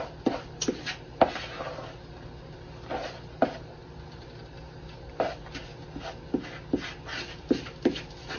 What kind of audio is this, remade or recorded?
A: recorded